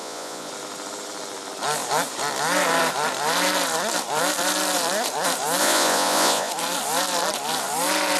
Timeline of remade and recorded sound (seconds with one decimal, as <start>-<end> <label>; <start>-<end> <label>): 0.0-0.5 remade; 0.5-5.6 recorded; 5.6-6.5 remade; 6.5-8.2 recorded